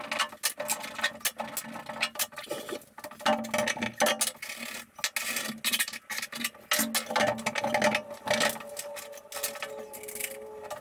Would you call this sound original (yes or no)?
yes